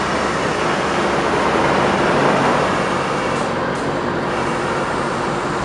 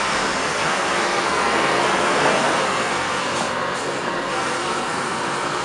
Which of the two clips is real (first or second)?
first